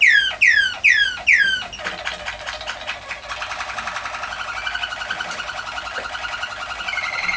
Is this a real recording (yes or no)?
yes